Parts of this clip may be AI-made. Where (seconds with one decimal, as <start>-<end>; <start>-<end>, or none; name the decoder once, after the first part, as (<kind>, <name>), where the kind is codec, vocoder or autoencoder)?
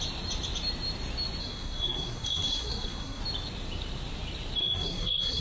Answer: 1.4-3.2 (codec, SNAC); 4.6-5.4